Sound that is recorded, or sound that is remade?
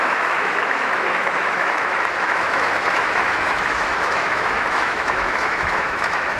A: remade